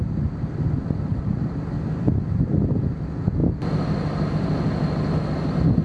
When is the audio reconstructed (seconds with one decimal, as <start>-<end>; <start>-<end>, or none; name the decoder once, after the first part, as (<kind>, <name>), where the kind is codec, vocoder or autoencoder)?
none